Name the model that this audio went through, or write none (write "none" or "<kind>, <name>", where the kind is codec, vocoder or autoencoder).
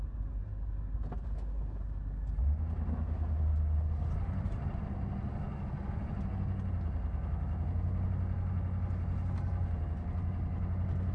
none